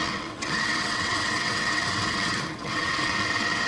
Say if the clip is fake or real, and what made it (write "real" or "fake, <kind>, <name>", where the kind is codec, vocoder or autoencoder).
fake, vocoder, WaveNeXt